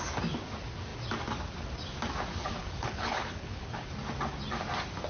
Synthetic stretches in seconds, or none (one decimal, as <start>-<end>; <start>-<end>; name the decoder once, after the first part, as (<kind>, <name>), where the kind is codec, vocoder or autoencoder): 2.6-3.9 (codec, HILCodec)